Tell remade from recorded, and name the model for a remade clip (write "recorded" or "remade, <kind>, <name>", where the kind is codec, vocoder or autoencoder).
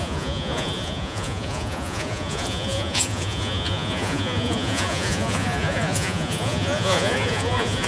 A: remade, vocoder, Vocos